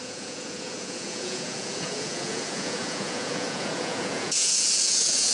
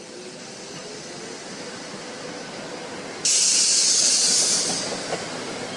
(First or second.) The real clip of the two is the second